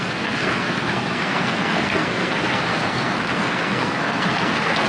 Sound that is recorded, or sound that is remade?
remade